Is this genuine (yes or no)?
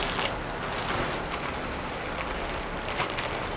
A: yes